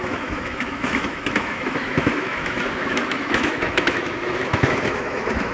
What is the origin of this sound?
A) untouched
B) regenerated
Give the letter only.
B